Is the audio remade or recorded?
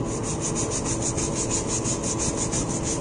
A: recorded